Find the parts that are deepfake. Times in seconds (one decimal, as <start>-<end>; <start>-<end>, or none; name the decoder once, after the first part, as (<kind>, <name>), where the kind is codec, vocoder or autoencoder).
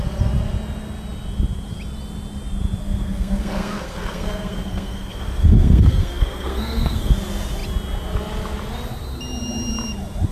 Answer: 2.8-7.1 (codec, SNAC)